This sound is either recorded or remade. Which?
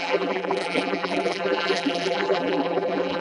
remade